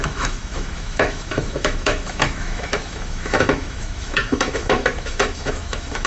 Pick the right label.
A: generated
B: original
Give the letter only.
A